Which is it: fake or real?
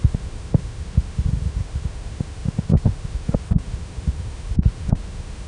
fake